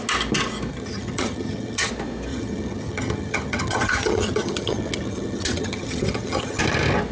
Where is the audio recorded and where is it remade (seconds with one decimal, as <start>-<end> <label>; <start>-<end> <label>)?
0.0-0.7 recorded; 0.7-1.9 remade; 1.9-2.3 recorded; 2.3-6.6 remade; 6.6-7.1 recorded